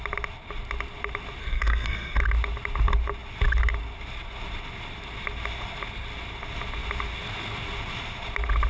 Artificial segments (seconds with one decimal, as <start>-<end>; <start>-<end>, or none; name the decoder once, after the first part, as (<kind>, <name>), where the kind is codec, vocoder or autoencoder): 1.4-2.2 (codec, SNAC)